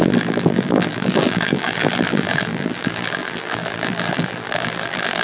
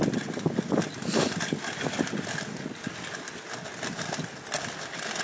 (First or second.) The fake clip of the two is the first